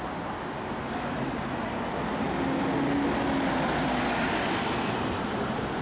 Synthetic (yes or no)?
no